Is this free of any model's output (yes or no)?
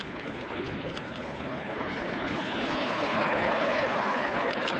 no